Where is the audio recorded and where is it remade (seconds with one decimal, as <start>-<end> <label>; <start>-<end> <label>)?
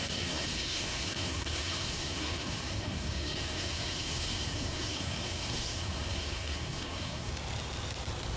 0.0-7.3 remade; 7.3-8.4 recorded